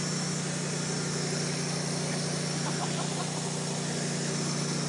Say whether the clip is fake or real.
real